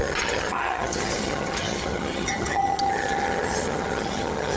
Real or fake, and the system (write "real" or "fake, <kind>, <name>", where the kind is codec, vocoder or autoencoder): fake, vocoder, HiFi-GAN